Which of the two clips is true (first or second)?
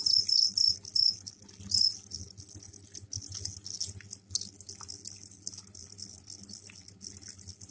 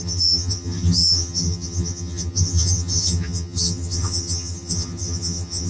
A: first